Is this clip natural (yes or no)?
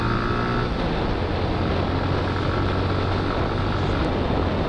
yes